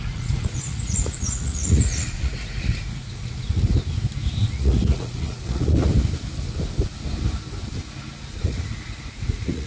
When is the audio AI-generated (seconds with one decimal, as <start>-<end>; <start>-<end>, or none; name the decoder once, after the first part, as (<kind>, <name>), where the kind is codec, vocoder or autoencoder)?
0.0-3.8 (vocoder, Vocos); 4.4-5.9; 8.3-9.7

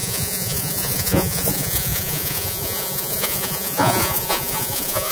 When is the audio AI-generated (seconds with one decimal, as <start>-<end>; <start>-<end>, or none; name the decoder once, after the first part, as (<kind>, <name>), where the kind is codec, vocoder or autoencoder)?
0.0-5.1 (vocoder, Vocos)

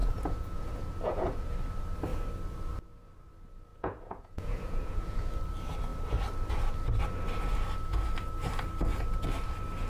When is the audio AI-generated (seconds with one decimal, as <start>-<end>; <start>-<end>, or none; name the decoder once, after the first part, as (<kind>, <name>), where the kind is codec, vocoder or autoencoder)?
0.0-1.5 (vocoder, Vocos); 3.7-5.3

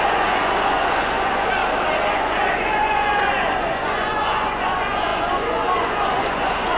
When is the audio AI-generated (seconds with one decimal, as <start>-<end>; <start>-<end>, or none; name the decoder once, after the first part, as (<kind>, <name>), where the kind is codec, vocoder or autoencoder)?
0.0-1.6 (vocoder, Vocos); 2.1-6.8

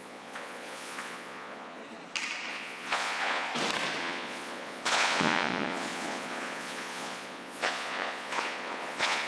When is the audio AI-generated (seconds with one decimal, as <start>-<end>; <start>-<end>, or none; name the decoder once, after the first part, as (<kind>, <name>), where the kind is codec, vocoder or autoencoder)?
0.0-1.8 (vocoder, Vocos); 2.5-3.5; 4.0-9.3